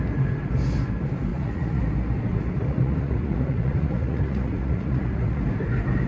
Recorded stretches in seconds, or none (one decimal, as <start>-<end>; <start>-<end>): 0.0-1.3; 1.8-2.3; 5.4-6.1